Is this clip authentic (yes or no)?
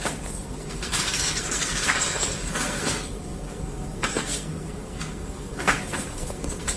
no